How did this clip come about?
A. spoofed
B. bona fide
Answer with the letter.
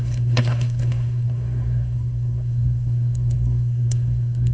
A